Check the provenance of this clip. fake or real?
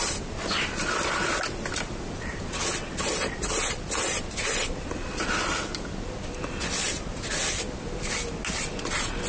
real